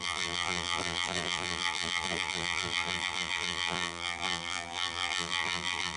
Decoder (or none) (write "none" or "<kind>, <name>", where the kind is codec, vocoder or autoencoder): vocoder, BigVGAN v2